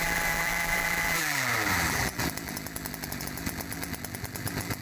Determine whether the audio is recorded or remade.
remade